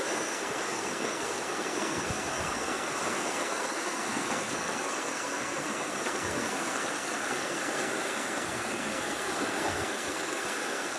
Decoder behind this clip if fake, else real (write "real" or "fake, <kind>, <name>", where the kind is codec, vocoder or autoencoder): fake, codec, SNAC